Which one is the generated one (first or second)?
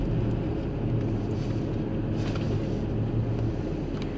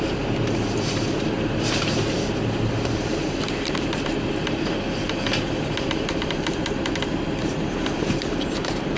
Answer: second